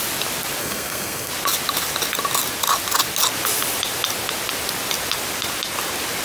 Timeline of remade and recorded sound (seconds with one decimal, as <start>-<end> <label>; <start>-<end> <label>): 0.0-0.6 recorded; 0.6-1.3 remade; 1.3-6.2 recorded